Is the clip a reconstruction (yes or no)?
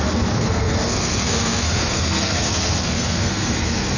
yes